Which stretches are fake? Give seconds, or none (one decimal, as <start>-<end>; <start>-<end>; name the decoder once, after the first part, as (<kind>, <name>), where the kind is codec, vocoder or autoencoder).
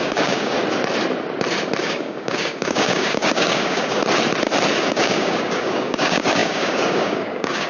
0.0-0.6 (codec, DAC); 1.8-4.0; 4.9-7.7